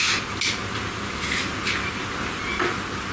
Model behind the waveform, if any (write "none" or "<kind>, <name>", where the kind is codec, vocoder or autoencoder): none